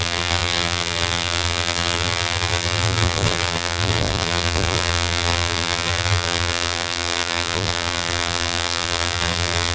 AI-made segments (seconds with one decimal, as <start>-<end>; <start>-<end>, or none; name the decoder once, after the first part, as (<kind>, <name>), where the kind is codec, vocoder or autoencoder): 0.0-9.7 (vocoder, BigVGAN v2)